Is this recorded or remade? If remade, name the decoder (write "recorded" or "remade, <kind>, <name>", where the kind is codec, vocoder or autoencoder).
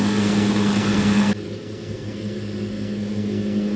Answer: remade, codec, SNAC